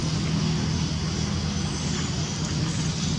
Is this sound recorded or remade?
recorded